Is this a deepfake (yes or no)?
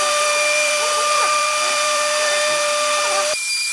yes